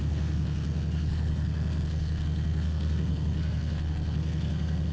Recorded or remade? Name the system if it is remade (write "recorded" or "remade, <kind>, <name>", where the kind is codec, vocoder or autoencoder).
remade, codec, SNAC